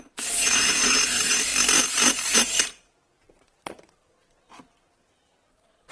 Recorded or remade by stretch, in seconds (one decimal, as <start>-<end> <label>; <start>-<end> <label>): 0.0-1.5 remade; 1.5-3.2 recorded; 3.2-5.9 remade